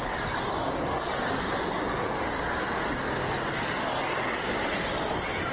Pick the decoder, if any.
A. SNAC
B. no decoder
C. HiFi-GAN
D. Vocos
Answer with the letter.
B